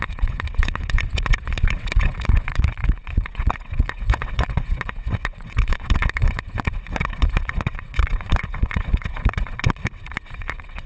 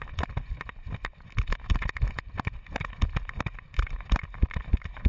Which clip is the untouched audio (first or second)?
second